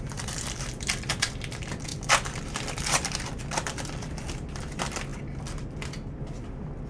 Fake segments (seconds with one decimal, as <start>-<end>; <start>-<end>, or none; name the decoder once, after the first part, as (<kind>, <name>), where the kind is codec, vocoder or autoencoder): 0.0-5.1 (vocoder, BigVGAN v2)